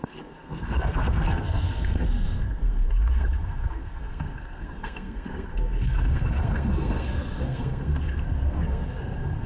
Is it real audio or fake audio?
fake